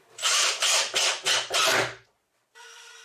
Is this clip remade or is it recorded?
remade